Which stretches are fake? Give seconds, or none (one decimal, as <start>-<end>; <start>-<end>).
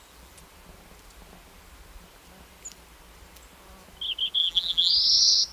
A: 4.4-4.9